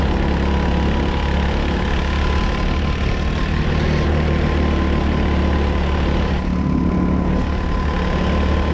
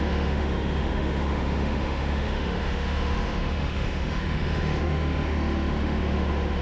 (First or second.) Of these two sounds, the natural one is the first